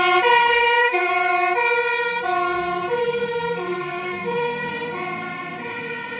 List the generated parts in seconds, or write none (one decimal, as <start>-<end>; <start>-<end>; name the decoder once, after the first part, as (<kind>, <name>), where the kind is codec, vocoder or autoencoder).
0.4-1.1 (codec, SNAC); 3.0-4.7